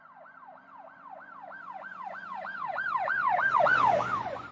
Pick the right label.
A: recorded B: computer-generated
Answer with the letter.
B